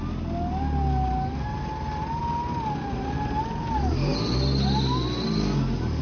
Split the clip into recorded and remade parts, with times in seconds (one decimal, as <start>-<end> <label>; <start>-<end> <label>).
0.0-6.0 recorded